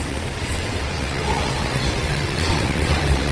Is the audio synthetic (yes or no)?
yes